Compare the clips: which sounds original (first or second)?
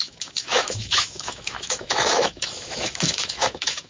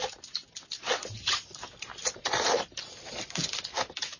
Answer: second